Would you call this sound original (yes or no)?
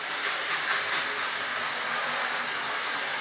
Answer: yes